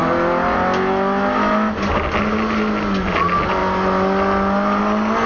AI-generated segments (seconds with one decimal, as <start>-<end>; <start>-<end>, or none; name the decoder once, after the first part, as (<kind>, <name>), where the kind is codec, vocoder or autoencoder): none